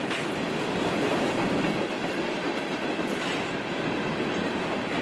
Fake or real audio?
real